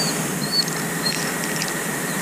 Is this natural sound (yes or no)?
yes